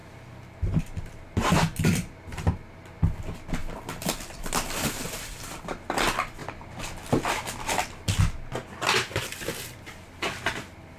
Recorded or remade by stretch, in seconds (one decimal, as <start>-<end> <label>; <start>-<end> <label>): 0.0-3.6 recorded; 3.6-5.6 remade; 5.6-11.0 recorded